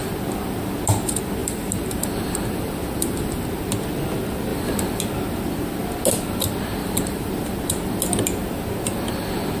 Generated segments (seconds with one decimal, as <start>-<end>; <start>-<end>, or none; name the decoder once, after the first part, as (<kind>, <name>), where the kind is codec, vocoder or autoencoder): 1.4-3.4 (vocoder, BigVGAN v2); 4.5-5.0; 6.8-7.3